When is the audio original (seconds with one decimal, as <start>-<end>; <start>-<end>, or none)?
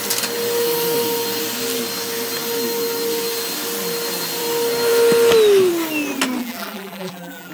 0.0-6.4